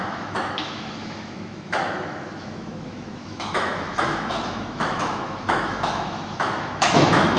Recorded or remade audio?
remade